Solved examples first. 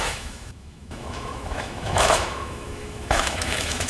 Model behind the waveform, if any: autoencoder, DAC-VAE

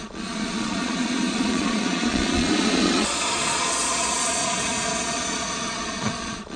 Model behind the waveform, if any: vocoder, Vocos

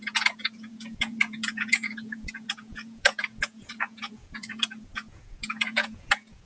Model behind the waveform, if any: vocoder, Vocos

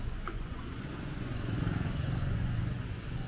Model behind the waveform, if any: vocoder, Vocos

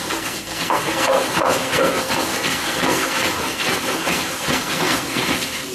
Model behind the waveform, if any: codec, SNAC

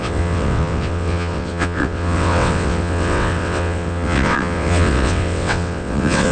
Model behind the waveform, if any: vocoder, WaveNeXt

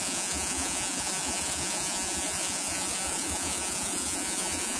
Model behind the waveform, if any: vocoder, Vocos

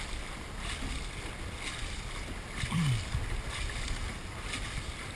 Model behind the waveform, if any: none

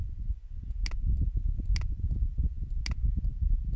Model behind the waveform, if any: none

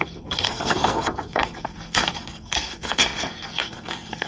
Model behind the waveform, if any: codec, SNAC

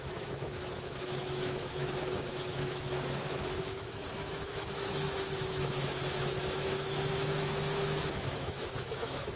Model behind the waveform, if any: autoencoder, DAC-VAE